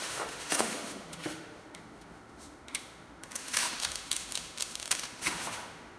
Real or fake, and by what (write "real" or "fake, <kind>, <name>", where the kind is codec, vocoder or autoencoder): fake, autoencoder, DAC-VAE